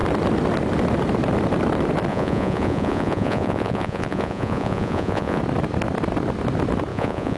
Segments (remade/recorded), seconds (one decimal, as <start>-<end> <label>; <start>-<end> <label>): 0.0-2.1 recorded; 2.1-5.4 remade; 5.4-6.9 recorded; 6.9-7.4 remade